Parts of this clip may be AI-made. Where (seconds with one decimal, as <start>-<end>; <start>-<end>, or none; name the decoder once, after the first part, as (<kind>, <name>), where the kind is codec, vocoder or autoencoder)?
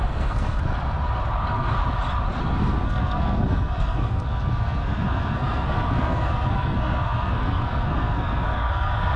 0.0-0.7 (codec, SNAC); 1.3-1.8; 2.4-9.2